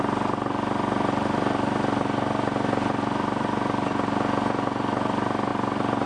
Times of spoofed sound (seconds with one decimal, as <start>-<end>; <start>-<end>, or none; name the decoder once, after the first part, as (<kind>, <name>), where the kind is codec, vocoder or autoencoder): none